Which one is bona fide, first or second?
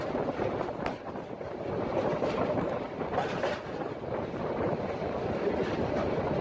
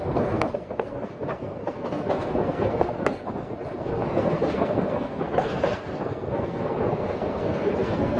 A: first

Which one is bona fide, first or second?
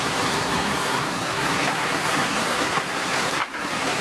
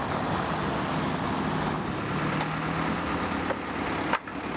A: second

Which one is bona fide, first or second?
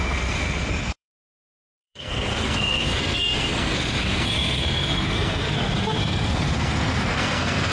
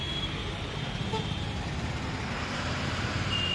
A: second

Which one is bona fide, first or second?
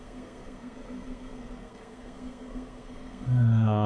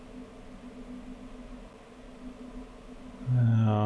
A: second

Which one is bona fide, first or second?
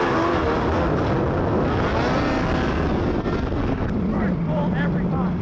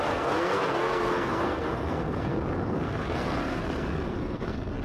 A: first